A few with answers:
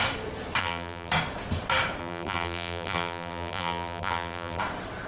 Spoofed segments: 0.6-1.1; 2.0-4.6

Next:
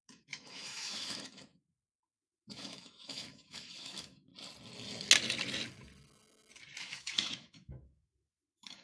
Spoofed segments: 0.0-4.3; 6.8-8.8

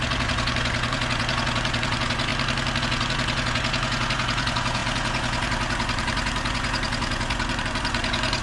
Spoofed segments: 0.0-2.3; 2.8-8.4

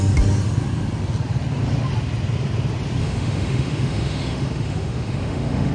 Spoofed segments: 3.0-5.7

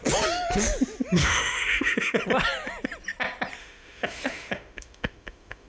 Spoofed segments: 1.2-2.2; 3.6-5.7

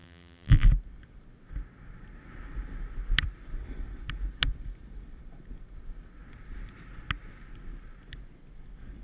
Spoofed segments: 0.0-0.7

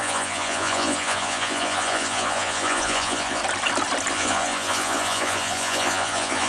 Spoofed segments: 0.0-3.4; 4.1-6.5

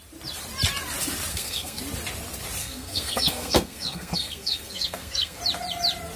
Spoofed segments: 1.3-1.8; 2.6-5.4